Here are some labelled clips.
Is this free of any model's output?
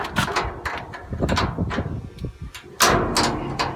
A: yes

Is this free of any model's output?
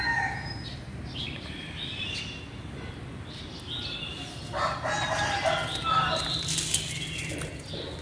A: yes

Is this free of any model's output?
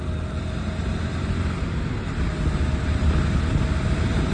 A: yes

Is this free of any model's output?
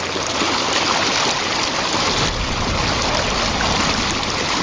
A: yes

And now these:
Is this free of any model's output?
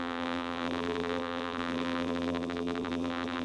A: no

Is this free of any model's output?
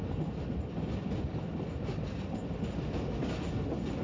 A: yes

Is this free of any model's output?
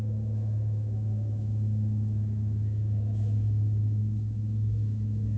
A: no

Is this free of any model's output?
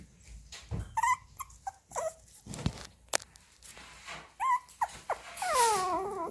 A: yes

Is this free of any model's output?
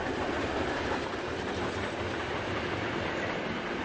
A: yes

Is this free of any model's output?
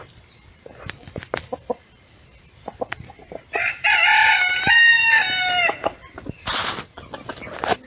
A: yes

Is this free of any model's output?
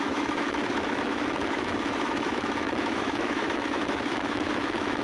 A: no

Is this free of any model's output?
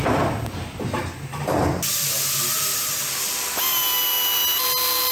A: yes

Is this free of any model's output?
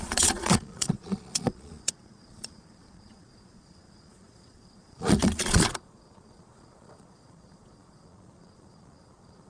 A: no